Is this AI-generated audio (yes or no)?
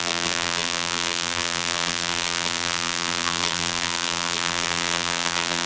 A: yes